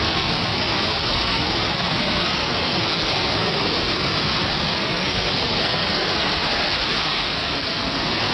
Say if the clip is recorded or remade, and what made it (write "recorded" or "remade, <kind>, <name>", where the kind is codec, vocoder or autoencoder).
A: remade, codec, SNAC